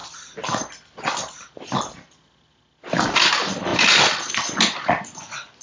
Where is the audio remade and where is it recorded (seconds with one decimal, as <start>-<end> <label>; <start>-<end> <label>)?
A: 0.0-5.6 recorded